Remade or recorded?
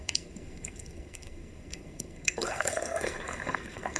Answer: remade